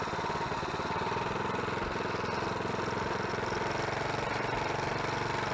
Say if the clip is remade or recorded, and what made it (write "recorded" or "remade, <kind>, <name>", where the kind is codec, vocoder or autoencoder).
recorded